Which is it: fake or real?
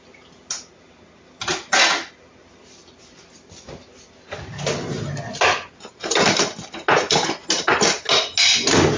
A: real